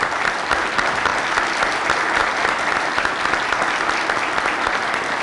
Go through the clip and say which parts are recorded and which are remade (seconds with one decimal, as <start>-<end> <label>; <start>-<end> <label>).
0.0-5.2 recorded